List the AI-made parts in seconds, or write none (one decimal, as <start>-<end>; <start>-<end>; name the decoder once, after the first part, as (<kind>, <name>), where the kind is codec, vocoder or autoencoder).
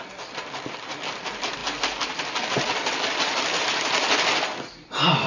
none